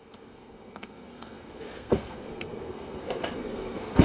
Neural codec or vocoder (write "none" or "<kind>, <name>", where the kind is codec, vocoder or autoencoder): codec, SNAC